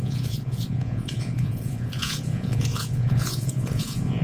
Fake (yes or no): yes